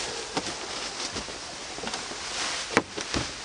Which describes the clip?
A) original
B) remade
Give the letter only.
A